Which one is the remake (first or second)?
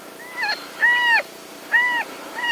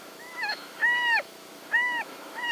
second